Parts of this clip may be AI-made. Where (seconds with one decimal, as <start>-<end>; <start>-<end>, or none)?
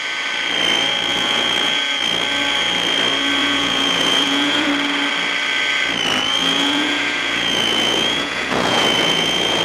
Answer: 1.1-1.9; 3.4-4.7; 6.4-9.6